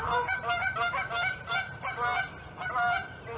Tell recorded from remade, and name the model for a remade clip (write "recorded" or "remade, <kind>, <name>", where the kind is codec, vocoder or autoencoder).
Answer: recorded